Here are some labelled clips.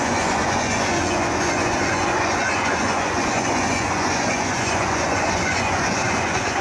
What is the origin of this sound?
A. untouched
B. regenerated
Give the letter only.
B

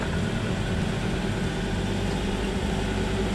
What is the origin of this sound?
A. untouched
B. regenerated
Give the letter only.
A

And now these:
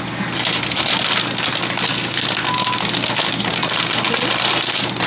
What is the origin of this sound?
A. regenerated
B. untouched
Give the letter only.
B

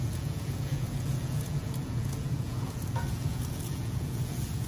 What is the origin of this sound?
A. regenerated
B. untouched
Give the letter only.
A